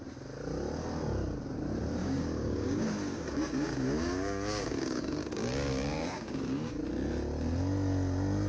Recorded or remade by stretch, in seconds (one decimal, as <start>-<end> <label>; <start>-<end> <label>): 0.0-2.0 recorded; 2.0-6.8 remade; 6.8-8.5 recorded